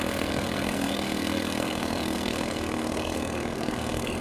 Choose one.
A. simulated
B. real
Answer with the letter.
A